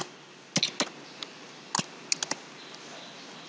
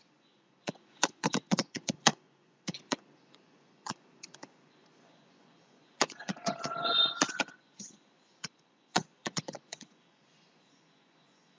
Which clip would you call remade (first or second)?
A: second